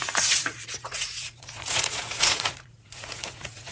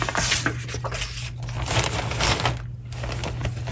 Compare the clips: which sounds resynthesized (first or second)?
first